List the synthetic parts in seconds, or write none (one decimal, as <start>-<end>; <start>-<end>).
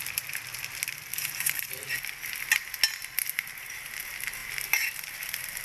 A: 1.1-1.7